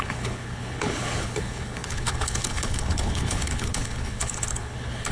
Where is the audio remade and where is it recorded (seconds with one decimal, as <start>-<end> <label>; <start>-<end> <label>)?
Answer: 0.0-5.1 remade